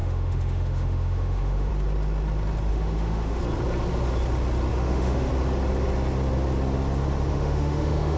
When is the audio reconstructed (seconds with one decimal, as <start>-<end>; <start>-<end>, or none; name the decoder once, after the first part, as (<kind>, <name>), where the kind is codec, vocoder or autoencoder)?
0.0-1.7 (autoencoder, DAC-VAE); 2.7-3.4; 4.7-5.3; 7.3-8.2